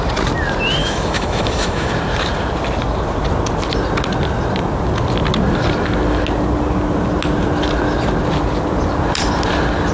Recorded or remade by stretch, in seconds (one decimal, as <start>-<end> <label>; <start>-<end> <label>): 0.0-0.8 recorded; 0.8-1.9 remade; 1.9-9.9 recorded